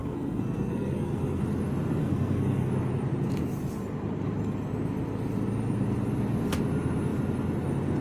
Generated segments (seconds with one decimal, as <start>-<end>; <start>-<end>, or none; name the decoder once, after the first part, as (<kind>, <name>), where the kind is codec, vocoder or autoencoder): 0.0-1.4 (codec, SNAC); 2.0-2.7